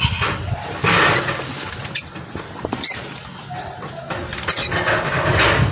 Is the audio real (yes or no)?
yes